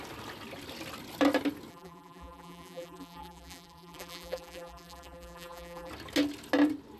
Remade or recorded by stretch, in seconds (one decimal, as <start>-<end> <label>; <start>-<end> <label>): 0.0-1.7 recorded; 1.7-5.9 remade; 5.9-7.0 recorded